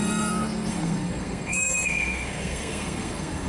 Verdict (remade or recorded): remade